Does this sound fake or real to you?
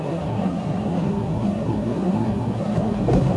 fake